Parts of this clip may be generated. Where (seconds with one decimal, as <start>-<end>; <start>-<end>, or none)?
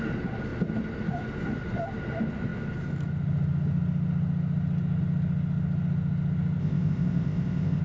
6.6-7.8